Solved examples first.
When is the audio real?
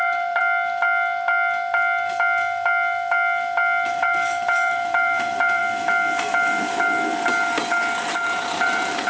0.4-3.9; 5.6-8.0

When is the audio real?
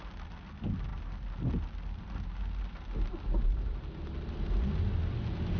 0.0-5.6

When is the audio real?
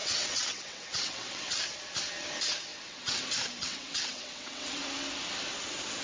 1.6-2.7; 3.2-3.6; 4.8-6.0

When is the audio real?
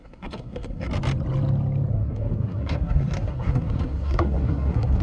0.9-1.9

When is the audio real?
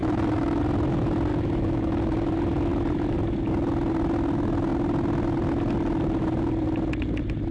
0.6-1.3; 2.3-7.5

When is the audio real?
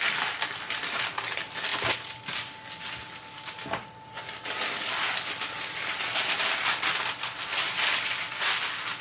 0.0-9.0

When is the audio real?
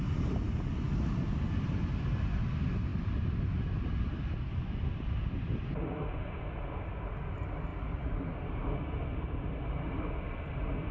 0.0-10.9